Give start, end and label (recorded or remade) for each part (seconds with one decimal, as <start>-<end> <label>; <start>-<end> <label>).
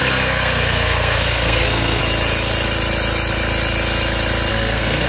0.0-2.0 remade; 2.0-4.5 recorded; 4.5-5.1 remade